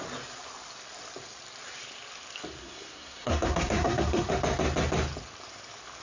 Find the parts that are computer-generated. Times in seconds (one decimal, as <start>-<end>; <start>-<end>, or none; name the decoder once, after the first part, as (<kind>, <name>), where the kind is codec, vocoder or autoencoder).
2.6-4.3 (codec, SNAC)